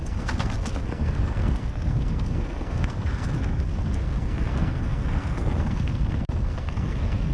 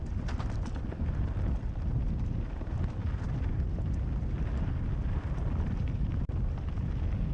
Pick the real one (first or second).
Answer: second